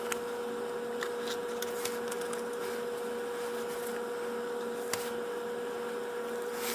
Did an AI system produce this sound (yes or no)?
no